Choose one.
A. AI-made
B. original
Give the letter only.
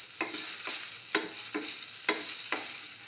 B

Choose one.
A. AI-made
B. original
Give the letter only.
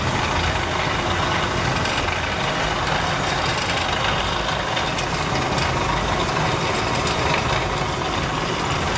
B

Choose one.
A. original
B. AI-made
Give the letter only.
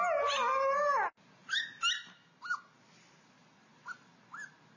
A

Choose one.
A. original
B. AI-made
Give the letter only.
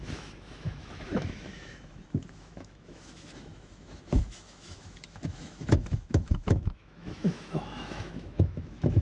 B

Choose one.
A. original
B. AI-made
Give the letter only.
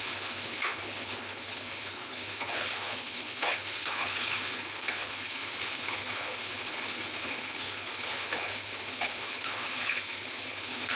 B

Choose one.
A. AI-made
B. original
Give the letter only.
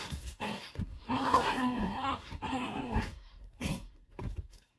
A